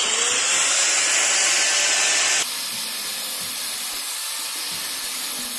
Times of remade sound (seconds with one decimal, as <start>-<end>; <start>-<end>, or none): none